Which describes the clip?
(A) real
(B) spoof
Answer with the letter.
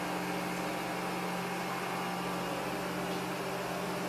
A